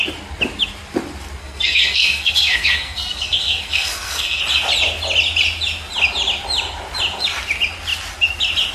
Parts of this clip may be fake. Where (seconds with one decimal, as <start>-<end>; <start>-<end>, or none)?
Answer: 1.4-4.4